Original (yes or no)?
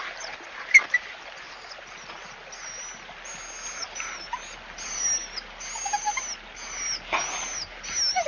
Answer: yes